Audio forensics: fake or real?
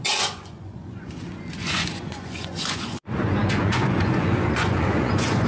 fake